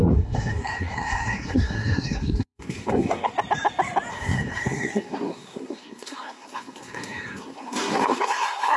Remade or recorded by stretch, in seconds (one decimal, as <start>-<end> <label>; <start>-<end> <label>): 0.0-3.3 remade; 3.3-4.1 recorded; 4.1-8.8 remade

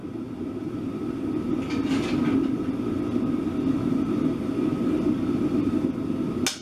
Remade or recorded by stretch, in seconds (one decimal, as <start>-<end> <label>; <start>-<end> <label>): 0.0-6.6 recorded

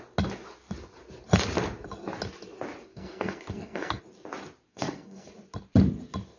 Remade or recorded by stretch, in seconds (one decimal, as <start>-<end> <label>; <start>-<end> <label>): 0.0-2.9 recorded; 2.9-4.0 remade; 4.0-4.7 recorded; 4.7-5.3 remade; 5.3-6.4 recorded

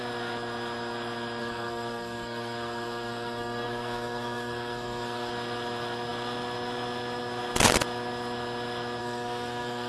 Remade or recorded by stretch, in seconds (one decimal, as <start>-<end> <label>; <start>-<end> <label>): 0.0-1.4 recorded; 1.4-5.3 remade; 5.3-9.0 recorded; 9.0-9.9 remade

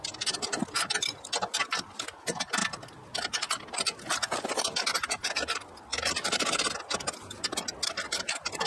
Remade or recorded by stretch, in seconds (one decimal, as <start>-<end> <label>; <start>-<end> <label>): 0.0-8.7 recorded

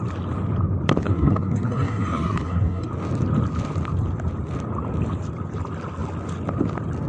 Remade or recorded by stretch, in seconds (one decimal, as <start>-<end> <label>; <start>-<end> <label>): 0.0-1.0 recorded; 1.0-2.9 remade; 2.9-7.1 recorded

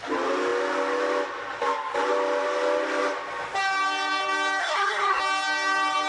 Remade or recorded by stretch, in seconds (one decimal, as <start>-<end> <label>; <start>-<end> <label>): 0.0-4.6 recorded; 4.6-5.2 remade; 5.2-6.1 recorded

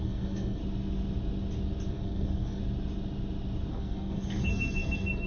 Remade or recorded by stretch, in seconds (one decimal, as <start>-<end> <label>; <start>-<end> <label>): 0.0-0.6 remade; 0.6-1.9 recorded; 1.9-2.6 remade; 2.6-3.7 recorded; 3.7-5.3 remade